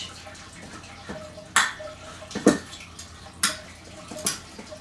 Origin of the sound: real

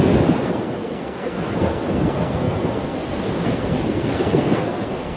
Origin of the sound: fake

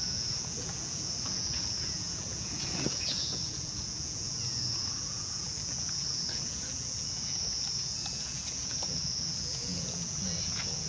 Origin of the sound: fake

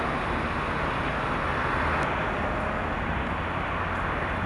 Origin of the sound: real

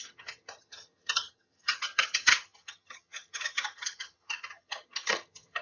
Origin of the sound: fake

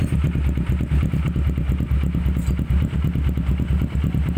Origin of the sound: real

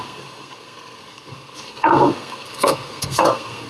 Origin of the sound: fake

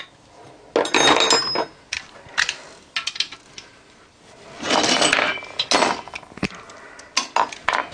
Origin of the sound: real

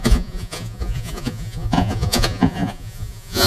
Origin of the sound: fake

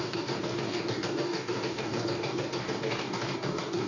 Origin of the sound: fake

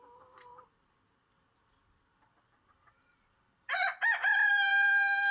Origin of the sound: fake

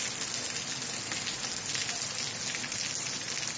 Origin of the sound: real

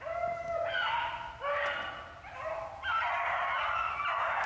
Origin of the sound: real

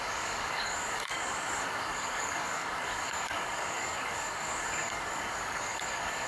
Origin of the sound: fake